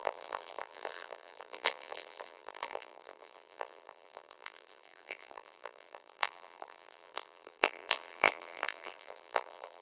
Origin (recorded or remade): remade